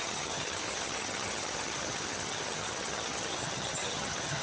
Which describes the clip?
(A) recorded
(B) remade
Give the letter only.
B